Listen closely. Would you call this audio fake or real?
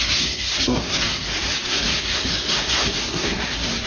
fake